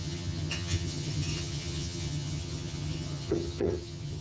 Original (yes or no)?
no